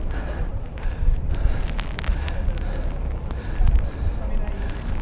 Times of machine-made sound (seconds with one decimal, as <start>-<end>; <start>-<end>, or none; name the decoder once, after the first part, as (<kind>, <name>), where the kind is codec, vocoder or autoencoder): 0.5-1.3 (vocoder, BigVGAN v2)

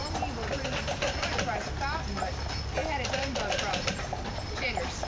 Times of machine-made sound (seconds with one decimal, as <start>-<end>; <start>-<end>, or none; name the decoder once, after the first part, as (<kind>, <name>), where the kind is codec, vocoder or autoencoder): none